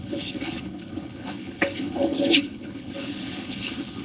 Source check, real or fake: fake